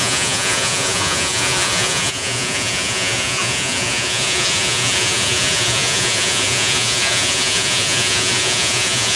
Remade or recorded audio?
remade